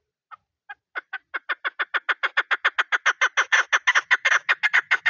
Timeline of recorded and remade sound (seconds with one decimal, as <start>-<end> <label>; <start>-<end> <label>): 0.0-5.1 recorded